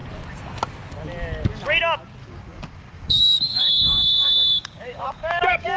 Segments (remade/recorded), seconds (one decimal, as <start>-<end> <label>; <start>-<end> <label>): 0.0-2.2 recorded; 2.2-5.8 remade